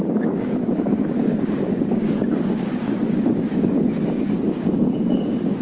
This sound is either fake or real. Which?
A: fake